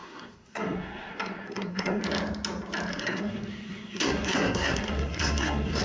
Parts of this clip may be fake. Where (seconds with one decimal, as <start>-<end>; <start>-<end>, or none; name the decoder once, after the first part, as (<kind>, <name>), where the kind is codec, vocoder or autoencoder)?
0.0-2.0 (codec, SNAC); 2.9-5.8